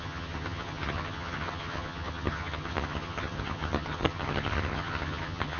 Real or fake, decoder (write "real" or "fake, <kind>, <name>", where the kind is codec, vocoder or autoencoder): fake, vocoder, HiFi-GAN